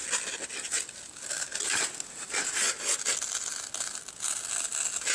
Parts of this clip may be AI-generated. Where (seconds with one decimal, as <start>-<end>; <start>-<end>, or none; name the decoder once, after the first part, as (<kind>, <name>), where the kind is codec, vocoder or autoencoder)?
none